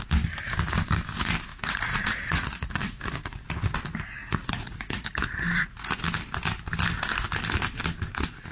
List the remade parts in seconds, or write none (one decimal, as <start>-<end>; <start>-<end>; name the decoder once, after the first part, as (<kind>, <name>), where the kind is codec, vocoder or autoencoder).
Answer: 1.5-3.4 (vocoder, Vocos); 4.2-5.9